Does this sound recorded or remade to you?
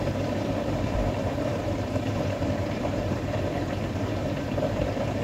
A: remade